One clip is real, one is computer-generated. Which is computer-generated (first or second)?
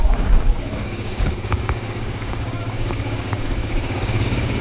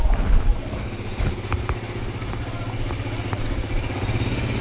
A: first